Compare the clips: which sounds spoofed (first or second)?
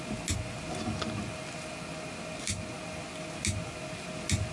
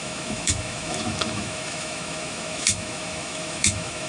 second